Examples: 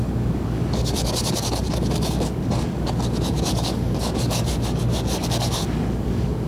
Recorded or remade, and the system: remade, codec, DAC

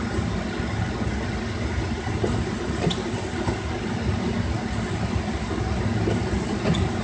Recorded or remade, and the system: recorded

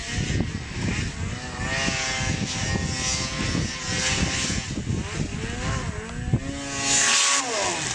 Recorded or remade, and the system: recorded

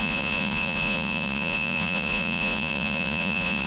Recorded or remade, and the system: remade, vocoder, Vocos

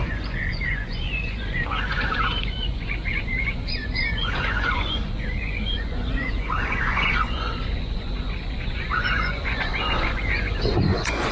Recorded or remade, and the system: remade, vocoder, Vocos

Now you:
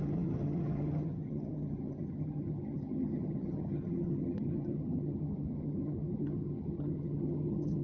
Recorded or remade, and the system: remade, vocoder, HiFi-GAN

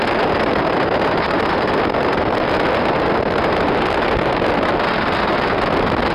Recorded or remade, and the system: recorded